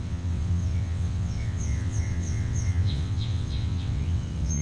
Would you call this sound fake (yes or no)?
yes